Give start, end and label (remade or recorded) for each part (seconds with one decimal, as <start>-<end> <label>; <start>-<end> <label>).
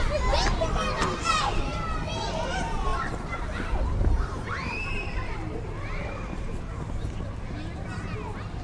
0.0-2.9 recorded; 2.9-6.6 remade; 6.6-8.6 recorded